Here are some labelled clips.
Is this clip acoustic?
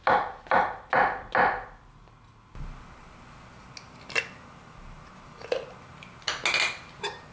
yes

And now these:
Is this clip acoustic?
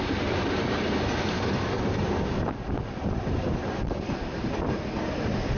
yes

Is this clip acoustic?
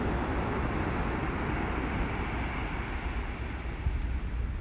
yes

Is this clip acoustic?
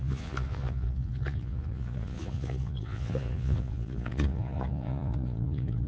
no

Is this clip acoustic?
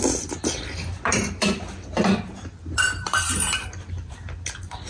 no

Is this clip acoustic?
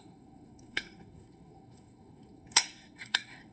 no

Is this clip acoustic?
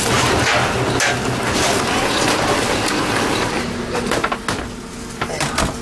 yes